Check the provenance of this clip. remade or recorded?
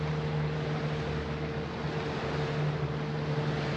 recorded